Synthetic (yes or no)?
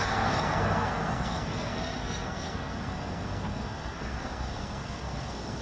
yes